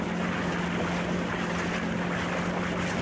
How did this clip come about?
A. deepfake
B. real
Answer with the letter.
B